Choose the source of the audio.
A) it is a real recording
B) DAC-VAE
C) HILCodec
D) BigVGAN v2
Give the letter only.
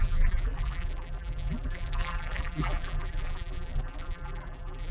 D